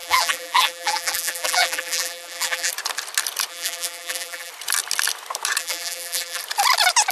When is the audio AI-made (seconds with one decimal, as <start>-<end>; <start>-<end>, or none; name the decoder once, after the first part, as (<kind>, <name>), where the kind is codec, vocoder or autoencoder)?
0.0-2.7 (vocoder, BigVGAN v2); 3.5-4.5; 5.6-6.4

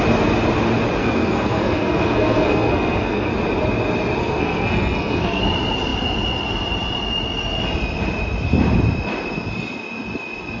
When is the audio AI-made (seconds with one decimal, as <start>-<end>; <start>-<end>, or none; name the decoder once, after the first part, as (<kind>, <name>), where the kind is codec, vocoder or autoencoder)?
1.0-3.3 (codec, SNAC); 4.2-5.4

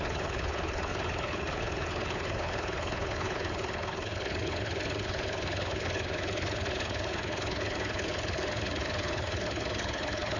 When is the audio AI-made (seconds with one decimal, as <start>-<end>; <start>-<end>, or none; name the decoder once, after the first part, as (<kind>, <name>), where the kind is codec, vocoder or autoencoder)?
0.0-10.4 (codec, HILCodec)

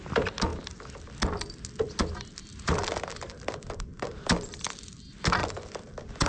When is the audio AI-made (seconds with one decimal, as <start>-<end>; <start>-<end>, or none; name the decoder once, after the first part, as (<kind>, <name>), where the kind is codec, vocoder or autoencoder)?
2.5-4.7 (vocoder, BigVGAN v2); 5.4-6.3

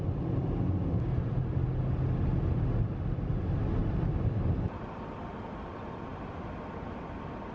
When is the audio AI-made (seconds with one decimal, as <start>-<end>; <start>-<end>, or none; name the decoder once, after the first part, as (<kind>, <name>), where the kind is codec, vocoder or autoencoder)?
none

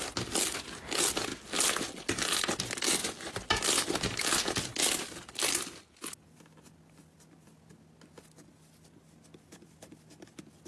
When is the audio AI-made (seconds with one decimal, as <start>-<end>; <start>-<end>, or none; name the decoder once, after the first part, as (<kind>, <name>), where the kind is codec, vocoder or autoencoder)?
none